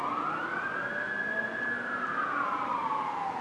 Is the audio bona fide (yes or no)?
yes